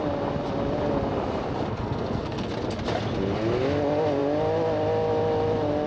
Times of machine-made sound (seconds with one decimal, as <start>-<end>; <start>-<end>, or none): 1.7-2.5